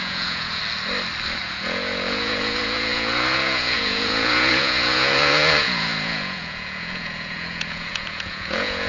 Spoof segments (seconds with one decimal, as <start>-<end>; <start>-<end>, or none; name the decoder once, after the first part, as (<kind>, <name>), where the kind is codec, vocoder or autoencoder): 0.0-0.6 (vocoder, Vocos); 1.4-8.9